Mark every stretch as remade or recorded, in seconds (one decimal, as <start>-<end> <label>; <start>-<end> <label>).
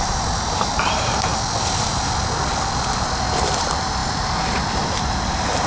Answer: 0.0-1.3 remade; 1.3-3.6 recorded; 3.6-5.7 remade